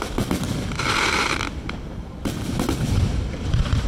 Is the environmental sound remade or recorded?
remade